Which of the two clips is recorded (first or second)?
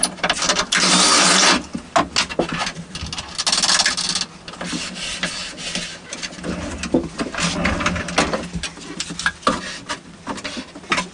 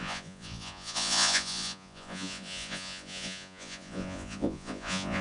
first